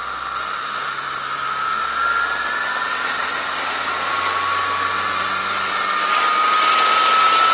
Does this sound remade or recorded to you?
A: recorded